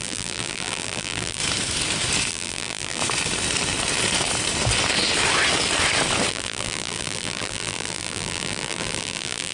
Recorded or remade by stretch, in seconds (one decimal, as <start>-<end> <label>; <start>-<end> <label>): 0.0-1.4 remade; 1.4-2.3 recorded; 2.3-3.0 remade; 3.0-6.3 recorded; 6.3-9.5 remade

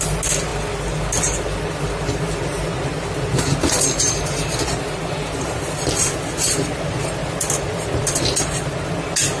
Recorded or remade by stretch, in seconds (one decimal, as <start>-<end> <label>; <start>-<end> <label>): 0.0-9.4 recorded